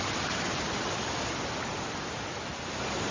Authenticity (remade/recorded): recorded